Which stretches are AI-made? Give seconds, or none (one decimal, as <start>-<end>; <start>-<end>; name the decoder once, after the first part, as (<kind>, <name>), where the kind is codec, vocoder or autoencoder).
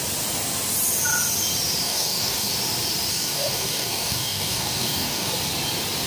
1.8-2.5 (codec, DAC); 3.1-5.3